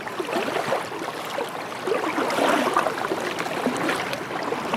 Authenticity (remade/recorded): recorded